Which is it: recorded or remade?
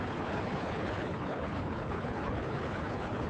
remade